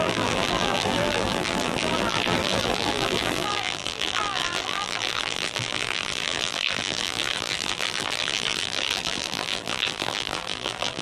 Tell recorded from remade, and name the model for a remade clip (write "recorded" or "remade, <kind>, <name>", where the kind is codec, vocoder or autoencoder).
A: remade, vocoder, BigVGAN v2